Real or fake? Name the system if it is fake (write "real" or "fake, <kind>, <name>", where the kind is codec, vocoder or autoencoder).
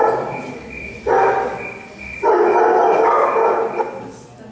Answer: real